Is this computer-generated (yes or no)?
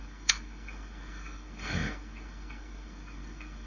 yes